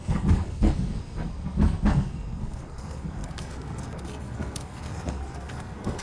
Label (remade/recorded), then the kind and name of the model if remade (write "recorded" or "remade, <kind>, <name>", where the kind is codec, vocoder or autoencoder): remade, codec, SNAC